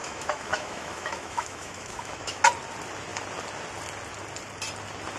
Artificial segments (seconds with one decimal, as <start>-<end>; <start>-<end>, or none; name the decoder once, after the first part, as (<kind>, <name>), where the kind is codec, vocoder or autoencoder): 0.0-2.4 (autoencoder, DAC-VAE)